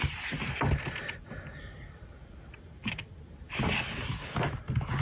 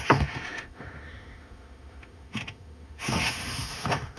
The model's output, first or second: second